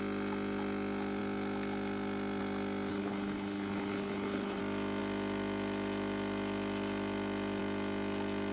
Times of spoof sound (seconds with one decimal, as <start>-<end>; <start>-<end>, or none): 2.9-4.6